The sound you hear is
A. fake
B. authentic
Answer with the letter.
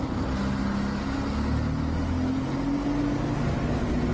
B